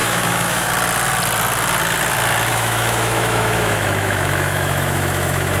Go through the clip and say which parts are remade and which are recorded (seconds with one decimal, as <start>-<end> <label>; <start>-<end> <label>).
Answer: 0.0-0.7 remade; 0.7-2.5 recorded; 2.5-5.6 remade